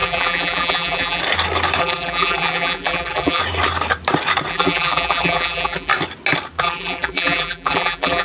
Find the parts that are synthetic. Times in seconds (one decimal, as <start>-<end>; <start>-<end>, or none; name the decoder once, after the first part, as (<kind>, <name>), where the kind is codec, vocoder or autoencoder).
0.0-1.2 (vocoder, BigVGAN v2); 1.8-3.4; 4.5-5.9; 6.6-8.2